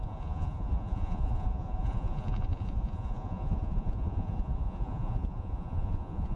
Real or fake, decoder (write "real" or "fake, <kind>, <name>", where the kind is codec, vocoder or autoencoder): fake, vocoder, Vocos